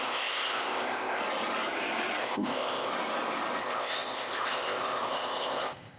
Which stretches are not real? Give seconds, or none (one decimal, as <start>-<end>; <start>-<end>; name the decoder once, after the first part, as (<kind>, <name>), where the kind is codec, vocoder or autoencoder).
0.0-1.2 (codec, ZipCodec); 2.2-2.9; 3.6-6.0